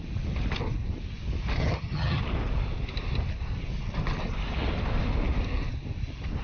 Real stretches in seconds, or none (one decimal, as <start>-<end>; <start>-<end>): 0.0-1.6; 2.2-6.4